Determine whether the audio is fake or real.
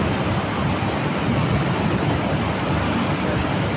real